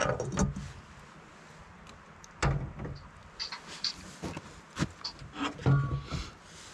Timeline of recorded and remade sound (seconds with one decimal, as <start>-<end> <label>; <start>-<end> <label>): 0.0-6.7 recorded